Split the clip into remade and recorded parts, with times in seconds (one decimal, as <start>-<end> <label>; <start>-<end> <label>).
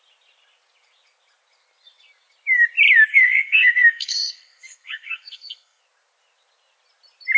0.0-3.1 recorded; 3.1-5.8 remade; 5.8-7.4 recorded